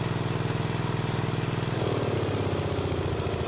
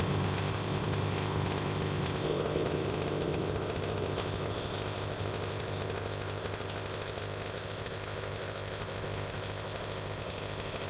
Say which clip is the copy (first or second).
second